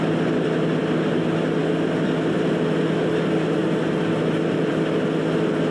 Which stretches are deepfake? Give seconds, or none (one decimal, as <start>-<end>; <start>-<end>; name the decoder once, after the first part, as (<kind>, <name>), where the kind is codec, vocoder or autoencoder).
none